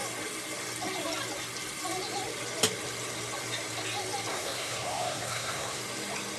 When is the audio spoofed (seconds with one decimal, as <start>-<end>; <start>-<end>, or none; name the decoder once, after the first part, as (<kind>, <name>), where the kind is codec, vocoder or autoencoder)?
4.3-5.8 (codec, SNAC)